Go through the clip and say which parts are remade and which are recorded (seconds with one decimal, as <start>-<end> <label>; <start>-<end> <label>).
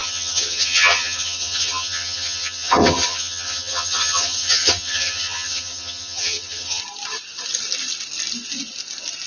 0.0-6.8 remade; 6.8-9.3 recorded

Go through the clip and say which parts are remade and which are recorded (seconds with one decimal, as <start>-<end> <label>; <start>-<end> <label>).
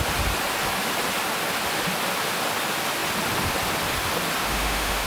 0.0-4.4 recorded; 4.4-5.1 remade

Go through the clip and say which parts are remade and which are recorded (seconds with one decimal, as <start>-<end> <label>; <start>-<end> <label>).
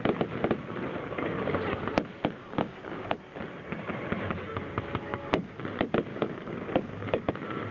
0.0-2.4 recorded; 2.4-3.2 remade; 3.2-5.0 recorded; 5.0-5.6 remade; 5.6-6.1 recorded; 6.1-7.3 remade; 7.3-7.7 recorded